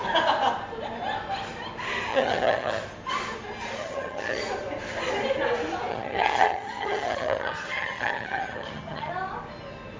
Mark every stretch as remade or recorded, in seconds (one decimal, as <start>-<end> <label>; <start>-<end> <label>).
0.0-2.1 recorded; 2.1-2.8 remade; 2.8-3.8 recorded; 3.8-4.4 remade; 4.4-5.9 recorded; 5.9-9.1 remade; 9.1-10.0 recorded